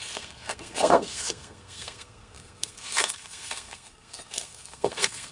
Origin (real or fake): fake